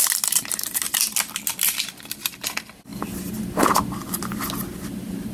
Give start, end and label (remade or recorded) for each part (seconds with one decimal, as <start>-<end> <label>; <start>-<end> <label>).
0.0-5.3 recorded

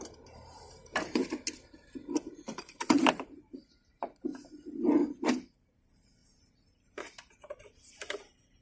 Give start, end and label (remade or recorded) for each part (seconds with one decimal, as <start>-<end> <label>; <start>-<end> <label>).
0.0-1.2 remade; 1.2-3.0 recorded; 3.0-4.3 remade; 4.3-5.3 recorded; 5.3-8.6 remade

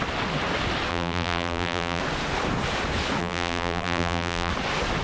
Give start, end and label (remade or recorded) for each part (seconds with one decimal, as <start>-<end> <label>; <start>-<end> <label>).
0.0-0.9 recorded; 0.9-2.0 remade; 2.0-3.2 recorded; 3.2-4.5 remade; 4.5-5.0 recorded

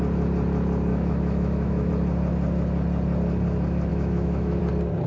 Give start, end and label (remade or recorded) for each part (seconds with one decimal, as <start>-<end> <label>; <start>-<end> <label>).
0.0-0.9 recorded; 0.9-1.9 remade; 1.9-3.9 recorded; 3.9-4.6 remade; 4.6-5.1 recorded

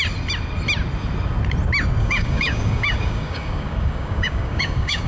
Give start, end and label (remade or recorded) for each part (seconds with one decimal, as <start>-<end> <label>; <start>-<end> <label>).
0.0-2.0 recorded; 2.0-5.1 remade

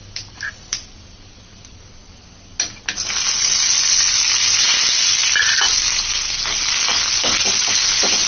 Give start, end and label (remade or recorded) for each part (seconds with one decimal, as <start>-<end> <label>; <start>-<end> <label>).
0.0-8.3 recorded

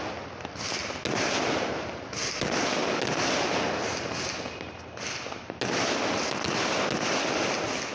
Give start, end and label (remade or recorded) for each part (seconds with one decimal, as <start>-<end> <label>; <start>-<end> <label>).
0.0-7.9 recorded